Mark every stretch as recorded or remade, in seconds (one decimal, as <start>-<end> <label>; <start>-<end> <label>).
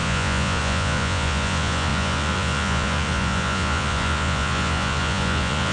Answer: 0.0-5.7 remade